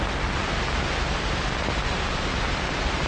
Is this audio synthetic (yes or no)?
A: no